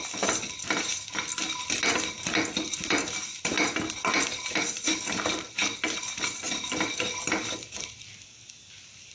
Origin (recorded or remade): recorded